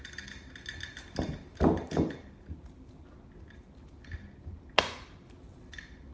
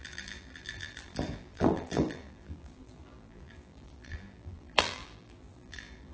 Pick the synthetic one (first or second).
second